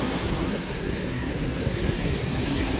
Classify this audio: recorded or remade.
remade